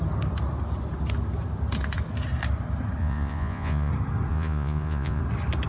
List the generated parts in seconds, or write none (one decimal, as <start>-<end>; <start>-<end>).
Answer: 3.0-3.9; 4.3-5.2